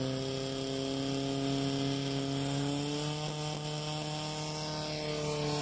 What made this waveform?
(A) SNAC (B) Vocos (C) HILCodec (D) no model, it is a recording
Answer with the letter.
D